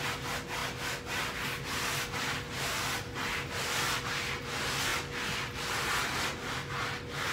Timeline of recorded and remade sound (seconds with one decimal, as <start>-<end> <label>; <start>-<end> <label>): 0.0-7.3 recorded